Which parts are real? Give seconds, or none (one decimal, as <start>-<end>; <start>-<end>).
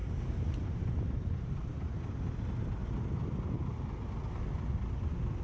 0.7-5.4